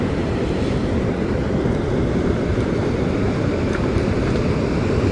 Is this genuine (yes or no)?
no